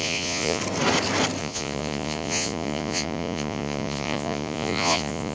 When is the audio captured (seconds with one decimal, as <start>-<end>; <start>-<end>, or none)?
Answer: 0.6-1.4